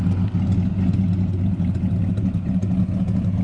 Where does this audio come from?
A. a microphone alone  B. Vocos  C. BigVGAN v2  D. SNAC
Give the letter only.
A